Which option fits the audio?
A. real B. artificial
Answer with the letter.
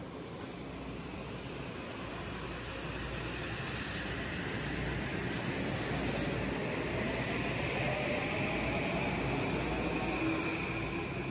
A